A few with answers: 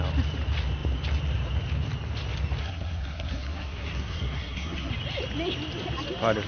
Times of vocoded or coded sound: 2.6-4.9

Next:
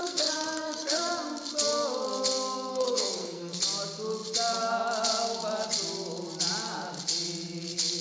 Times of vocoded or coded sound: 0.0-1.1; 2.7-3.6

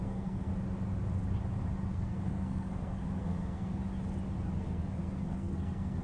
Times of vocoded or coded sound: 0.0-0.5; 1.9-3.8; 4.6-6.0

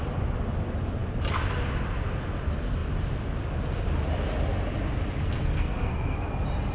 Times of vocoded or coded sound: 5.2-6.3

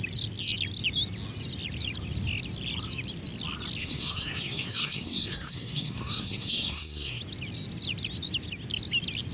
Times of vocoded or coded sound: 3.8-7.2

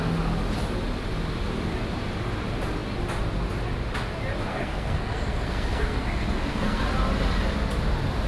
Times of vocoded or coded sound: 4.5-6.8